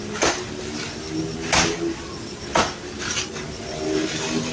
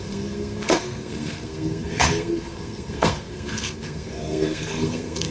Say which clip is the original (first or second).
first